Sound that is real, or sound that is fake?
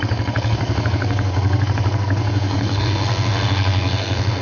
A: fake